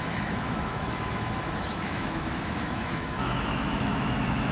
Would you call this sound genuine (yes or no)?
no